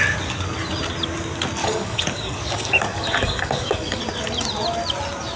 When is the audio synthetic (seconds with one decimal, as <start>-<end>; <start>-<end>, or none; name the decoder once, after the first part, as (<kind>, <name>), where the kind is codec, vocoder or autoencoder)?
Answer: 1.6-4.0 (codec, DAC)

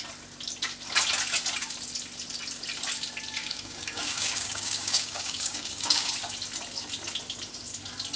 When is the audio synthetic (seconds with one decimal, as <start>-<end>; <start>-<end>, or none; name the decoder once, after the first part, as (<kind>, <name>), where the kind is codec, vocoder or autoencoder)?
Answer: 3.4-6.1 (codec, DAC)

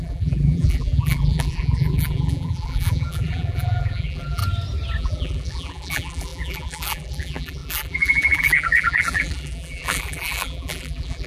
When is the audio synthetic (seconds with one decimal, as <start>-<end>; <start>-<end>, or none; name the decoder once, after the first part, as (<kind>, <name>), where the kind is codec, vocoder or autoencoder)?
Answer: 0.0-4.4 (vocoder, BigVGAN v2); 5.0-11.3

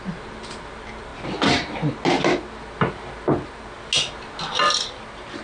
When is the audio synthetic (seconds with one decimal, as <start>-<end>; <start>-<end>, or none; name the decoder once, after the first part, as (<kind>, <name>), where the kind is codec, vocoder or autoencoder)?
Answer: none

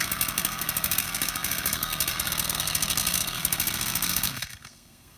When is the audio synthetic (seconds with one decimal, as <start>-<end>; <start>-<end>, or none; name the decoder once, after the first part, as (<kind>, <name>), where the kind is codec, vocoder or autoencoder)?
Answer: 0.0-5.2 (codec, SNAC)

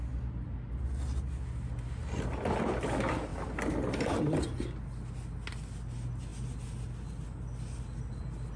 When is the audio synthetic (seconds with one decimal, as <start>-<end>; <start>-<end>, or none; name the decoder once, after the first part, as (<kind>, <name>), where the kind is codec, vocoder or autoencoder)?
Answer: none

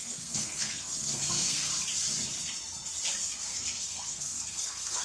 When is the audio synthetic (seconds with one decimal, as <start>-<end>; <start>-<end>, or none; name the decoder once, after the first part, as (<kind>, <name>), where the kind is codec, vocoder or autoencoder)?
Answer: 0.0-1.7 (codec, SNAC); 3.2-5.0

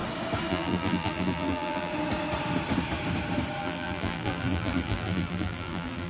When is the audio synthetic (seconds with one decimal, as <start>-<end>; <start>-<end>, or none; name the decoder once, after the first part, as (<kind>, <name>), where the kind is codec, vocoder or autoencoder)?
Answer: 0.5-1.9 (vocoder, BigVGAN v2); 3.6-6.1